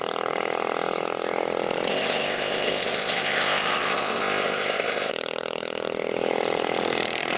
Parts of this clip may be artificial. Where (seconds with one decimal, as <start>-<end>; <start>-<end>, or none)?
1.9-5.1